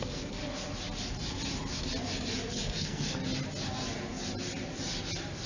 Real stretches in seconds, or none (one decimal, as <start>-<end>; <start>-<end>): 0.4-2.5; 3.2-5.5